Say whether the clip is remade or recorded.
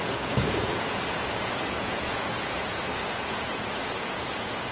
remade